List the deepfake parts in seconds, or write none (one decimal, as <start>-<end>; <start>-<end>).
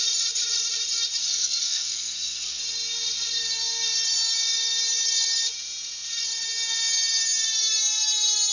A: 1.2-2.6